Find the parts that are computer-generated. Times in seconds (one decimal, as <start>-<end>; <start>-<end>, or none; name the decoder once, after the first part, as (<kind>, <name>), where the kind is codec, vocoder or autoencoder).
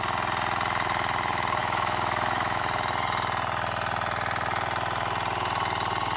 1.6-2.6 (autoencoder, DAC-VAE)